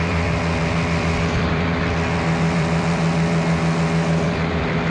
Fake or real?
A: fake